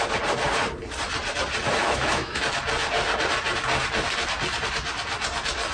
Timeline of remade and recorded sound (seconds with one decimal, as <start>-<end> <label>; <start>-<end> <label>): 0.0-1.8 recorded; 1.8-2.4 remade; 2.4-5.7 recorded